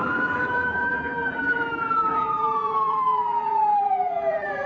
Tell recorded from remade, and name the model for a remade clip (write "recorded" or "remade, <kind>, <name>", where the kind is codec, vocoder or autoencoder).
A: remade, vocoder, BigVGAN v2